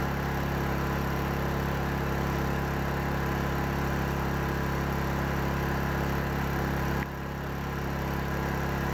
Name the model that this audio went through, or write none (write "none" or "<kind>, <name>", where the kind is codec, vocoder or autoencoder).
none